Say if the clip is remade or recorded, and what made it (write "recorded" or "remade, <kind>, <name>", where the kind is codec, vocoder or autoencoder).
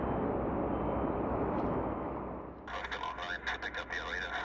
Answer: recorded